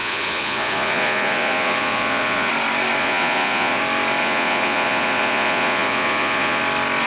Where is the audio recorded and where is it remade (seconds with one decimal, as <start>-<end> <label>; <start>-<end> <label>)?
0.0-2.5 remade; 2.5-3.0 recorded; 3.0-3.8 remade; 3.8-4.2 recorded; 4.2-6.6 remade; 6.6-7.1 recorded